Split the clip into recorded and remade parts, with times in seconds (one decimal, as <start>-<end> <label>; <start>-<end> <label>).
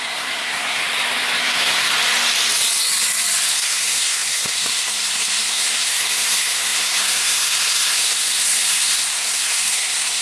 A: 0.0-0.8 remade; 0.8-1.4 recorded; 1.4-1.9 remade; 1.9-3.5 recorded; 3.5-10.2 remade